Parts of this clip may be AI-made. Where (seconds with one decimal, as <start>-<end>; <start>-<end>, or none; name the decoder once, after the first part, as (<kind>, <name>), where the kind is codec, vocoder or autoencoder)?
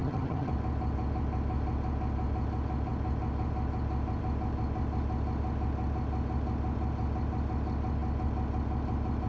0.0-0.5 (vocoder, HiFi-GAN)